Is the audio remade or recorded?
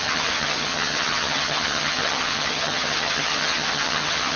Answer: remade